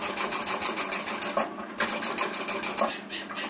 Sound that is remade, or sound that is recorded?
recorded